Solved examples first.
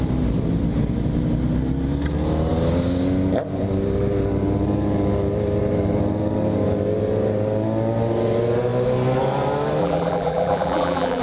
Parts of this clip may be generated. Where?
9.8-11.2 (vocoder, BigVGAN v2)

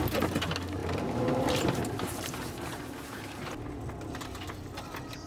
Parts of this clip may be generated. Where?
none

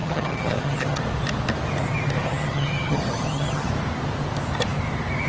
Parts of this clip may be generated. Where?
0.0-1.0 (vocoder, HiFi-GAN); 2.2-3.7

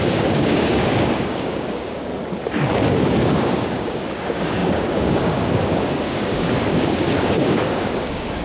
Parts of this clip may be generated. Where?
0.0-2.1 (codec, DAC); 2.7-8.4

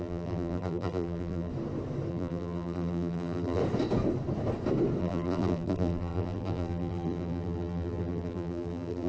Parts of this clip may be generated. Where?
0.0-1.5 (vocoder, BigVGAN v2); 2.1-3.6; 5.0-9.1

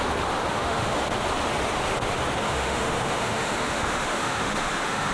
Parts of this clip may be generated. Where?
0.5-1.0 (autoencoder, DAC-VAE); 2.4-5.1

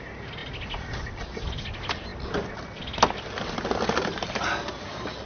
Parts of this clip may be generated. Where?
none

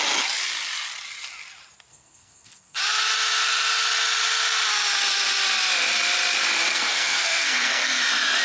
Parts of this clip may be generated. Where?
1.9-2.8 (codec, SNAC); 6.7-8.0